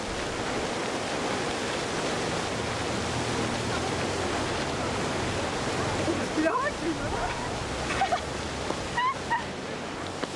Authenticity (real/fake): real